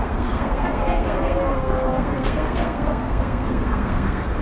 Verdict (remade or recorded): remade